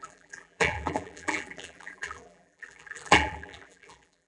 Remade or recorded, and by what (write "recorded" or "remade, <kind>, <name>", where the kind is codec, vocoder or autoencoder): remade, vocoder, BigVGAN v2